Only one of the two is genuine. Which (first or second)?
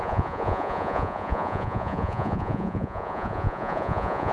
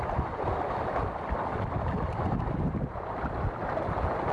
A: second